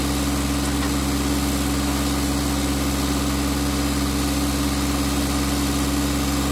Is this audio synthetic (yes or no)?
no